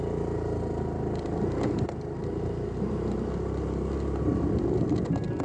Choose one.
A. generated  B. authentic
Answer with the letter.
B